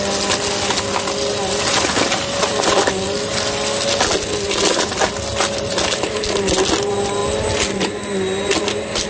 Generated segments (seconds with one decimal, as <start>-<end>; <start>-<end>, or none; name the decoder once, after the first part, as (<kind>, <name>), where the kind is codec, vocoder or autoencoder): none